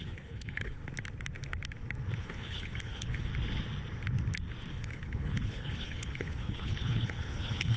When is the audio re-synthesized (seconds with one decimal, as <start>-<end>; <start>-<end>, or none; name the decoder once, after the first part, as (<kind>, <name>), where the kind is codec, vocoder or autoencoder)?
0.0-0.8 (codec, HILCodec); 2.2-3.3; 4.7-7.8